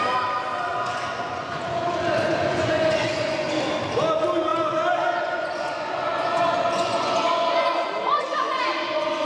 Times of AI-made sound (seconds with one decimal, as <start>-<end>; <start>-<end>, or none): 0.7-3.5; 4.5-8.6